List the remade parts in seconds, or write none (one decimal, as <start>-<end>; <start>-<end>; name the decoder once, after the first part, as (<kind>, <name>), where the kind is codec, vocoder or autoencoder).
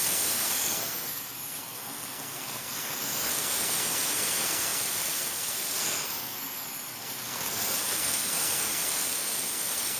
0.0-10.0 (codec, SNAC)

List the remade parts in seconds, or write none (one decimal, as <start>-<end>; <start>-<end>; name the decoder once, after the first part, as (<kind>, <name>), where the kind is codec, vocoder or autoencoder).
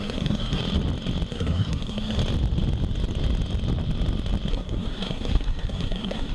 0.0-0.6 (codec, SNAC); 1.3-2.2; 4.5-6.3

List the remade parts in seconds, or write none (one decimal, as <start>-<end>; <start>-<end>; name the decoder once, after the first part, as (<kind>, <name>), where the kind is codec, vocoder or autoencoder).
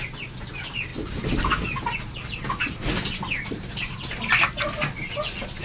none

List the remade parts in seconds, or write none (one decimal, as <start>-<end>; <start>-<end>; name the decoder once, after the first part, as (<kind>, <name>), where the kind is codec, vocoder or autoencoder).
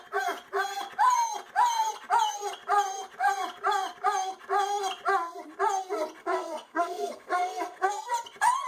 6.2-8.1 (codec, SNAC)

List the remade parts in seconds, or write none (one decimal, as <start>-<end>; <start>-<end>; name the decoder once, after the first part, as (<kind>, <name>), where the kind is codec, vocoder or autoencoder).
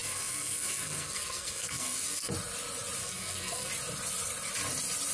0.0-2.3 (codec, SNAC); 3.0-3.7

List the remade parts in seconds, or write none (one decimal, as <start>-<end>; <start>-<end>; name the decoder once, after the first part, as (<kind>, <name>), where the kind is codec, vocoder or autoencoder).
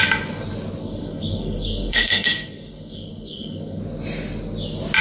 0.8-3.8 (codec, SNAC)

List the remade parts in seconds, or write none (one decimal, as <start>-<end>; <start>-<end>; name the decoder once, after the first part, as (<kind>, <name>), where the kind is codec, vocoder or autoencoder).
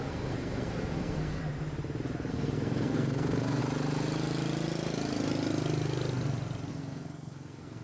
0.0-1.4 (codec, SNAC); 2.3-3.6; 6.7-7.8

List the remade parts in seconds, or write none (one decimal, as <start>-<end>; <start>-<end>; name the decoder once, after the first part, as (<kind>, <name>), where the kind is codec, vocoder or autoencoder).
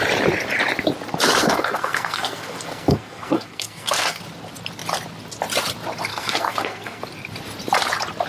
1.4-4.2 (codec, SNAC); 6.1-7.0